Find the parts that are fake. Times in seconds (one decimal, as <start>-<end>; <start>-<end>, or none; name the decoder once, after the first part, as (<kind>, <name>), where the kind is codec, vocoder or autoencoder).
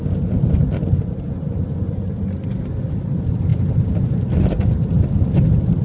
none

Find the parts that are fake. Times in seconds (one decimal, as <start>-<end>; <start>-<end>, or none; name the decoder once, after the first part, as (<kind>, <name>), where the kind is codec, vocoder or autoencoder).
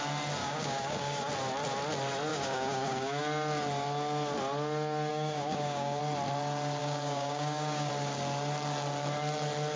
0.4-1.3 (codec, DAC); 2.3-3.2; 5.1-6.0; 6.8-7.9